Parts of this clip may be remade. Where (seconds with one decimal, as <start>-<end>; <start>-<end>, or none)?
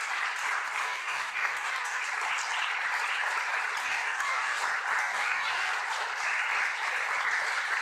0.8-2.0; 3.8-4.6; 5.0-5.7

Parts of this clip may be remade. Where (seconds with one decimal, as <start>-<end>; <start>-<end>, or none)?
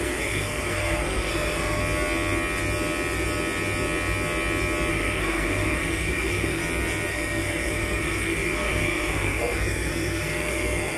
0.0-1.8; 4.9-6.6; 7.1-11.0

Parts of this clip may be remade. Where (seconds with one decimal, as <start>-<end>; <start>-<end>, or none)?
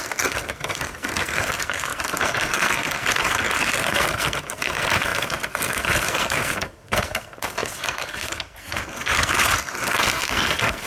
0.0-10.9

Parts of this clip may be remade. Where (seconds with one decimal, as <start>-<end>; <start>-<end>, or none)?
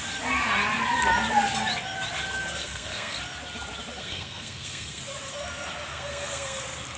2.6-3.2; 4.0-5.0; 5.9-6.6